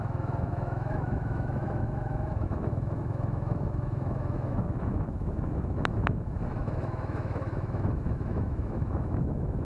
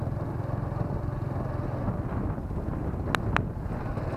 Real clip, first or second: second